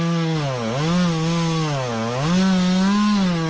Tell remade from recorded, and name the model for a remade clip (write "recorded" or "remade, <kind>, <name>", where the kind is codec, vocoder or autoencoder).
recorded